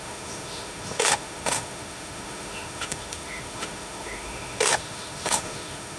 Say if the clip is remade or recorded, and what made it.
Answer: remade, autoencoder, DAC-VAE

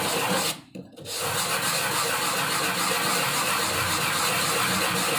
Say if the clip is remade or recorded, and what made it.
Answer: recorded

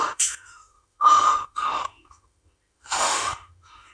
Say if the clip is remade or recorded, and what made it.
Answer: remade, autoencoder, DAC-VAE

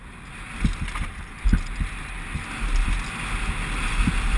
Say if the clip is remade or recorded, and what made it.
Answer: recorded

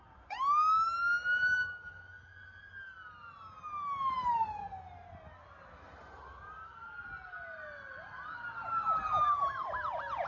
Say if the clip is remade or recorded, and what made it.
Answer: recorded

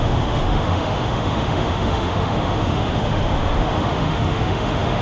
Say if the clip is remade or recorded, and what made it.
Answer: remade, autoencoder, DAC-VAE